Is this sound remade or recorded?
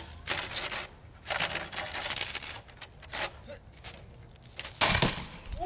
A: recorded